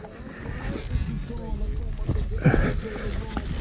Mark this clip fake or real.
real